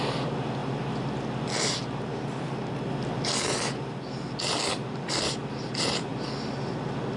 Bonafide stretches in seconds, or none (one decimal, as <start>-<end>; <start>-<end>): 0.0-7.2